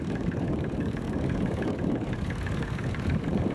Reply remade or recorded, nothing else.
remade